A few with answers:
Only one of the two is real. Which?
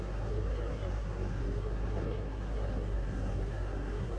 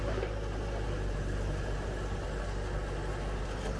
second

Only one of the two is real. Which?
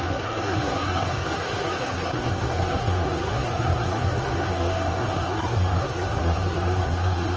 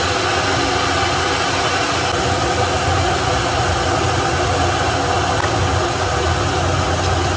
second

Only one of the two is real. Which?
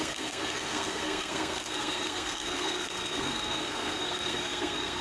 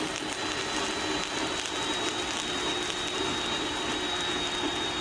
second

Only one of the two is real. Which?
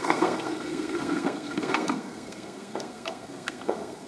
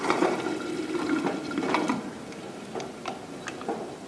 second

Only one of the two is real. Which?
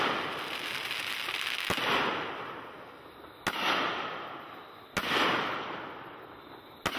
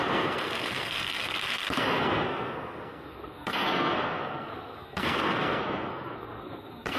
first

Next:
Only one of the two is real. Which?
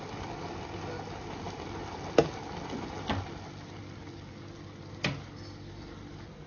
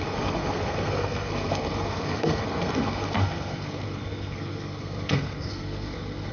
first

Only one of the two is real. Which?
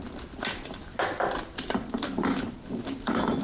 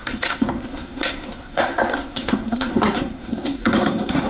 first